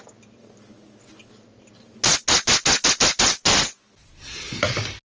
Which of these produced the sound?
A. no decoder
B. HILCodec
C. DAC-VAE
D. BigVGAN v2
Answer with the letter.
A